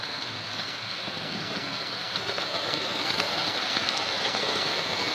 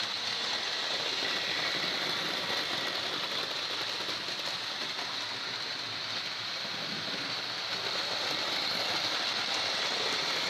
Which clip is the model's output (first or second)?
first